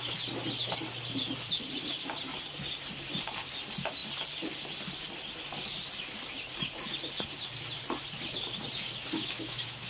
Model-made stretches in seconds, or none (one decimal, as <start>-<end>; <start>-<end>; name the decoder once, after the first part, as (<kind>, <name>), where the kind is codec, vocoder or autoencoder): 9.2-9.9 (autoencoder, DAC-VAE)